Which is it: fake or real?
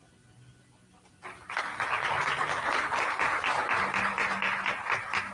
real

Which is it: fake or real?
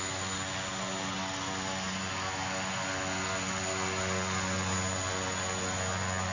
real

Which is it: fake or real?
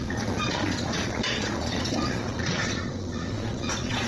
fake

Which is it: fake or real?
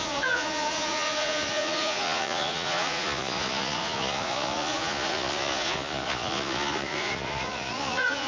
fake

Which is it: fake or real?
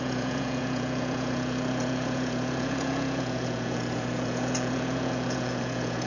fake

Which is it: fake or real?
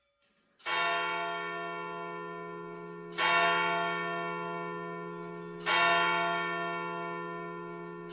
real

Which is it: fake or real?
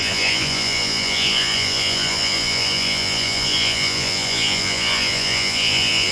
fake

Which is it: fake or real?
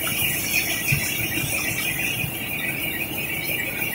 real